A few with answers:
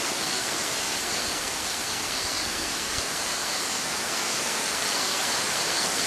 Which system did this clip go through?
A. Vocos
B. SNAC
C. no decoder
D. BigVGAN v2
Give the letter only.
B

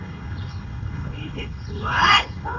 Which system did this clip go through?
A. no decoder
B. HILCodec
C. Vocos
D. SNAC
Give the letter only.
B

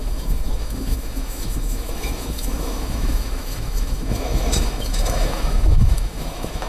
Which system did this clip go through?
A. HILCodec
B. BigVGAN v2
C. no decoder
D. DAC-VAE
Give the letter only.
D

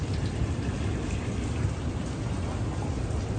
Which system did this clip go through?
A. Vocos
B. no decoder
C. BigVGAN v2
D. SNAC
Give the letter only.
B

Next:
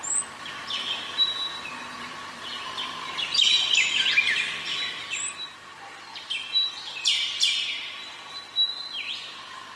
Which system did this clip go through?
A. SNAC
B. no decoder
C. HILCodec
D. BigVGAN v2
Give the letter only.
D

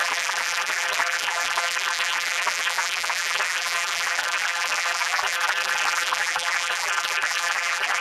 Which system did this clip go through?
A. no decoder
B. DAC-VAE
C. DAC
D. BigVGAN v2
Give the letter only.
D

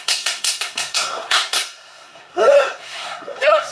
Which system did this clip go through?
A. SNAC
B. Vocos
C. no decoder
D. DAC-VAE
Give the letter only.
A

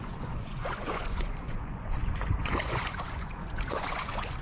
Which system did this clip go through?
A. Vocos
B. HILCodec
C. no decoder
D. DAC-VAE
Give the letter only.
A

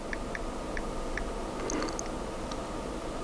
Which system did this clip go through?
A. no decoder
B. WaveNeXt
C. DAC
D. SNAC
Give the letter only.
A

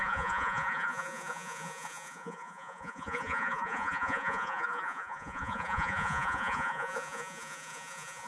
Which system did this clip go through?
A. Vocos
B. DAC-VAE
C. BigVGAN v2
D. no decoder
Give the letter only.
A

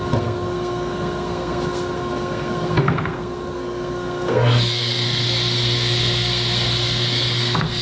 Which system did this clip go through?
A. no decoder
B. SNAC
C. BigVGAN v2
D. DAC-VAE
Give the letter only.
B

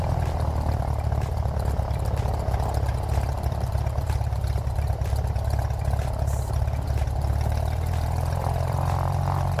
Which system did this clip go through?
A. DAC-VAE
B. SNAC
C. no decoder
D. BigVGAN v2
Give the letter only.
D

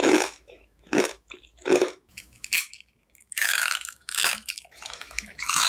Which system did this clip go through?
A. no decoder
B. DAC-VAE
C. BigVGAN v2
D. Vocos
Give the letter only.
B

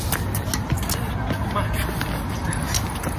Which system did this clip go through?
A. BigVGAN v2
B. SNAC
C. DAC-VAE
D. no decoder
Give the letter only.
D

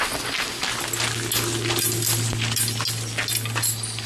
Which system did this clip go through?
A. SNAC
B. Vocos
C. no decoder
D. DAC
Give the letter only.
C